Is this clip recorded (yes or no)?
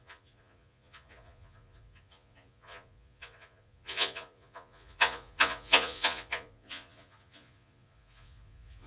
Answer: no